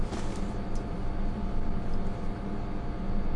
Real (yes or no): yes